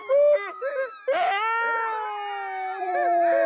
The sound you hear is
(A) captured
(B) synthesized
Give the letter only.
A